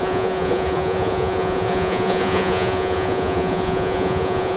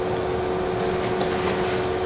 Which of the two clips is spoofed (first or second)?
first